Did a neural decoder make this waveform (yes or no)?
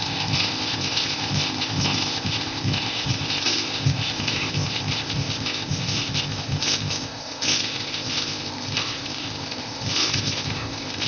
yes